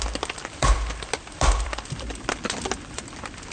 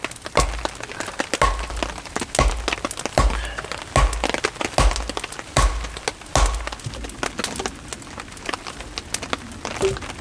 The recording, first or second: second